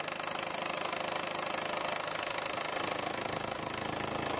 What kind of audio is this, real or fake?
real